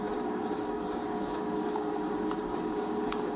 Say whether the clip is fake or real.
fake